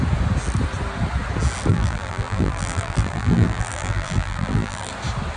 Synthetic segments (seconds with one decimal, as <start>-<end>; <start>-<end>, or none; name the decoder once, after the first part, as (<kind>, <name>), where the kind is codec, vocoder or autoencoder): 1.7-4.9 (vocoder, BigVGAN v2)